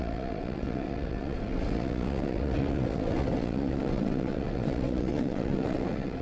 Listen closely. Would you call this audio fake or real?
fake